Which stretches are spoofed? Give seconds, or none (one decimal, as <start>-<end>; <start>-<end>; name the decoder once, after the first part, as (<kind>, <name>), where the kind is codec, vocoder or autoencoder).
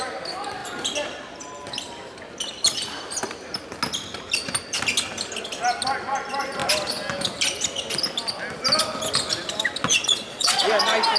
9.9-10.7 (vocoder, Vocos)